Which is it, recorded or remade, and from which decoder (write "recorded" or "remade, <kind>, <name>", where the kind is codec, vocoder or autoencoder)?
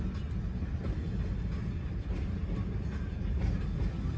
recorded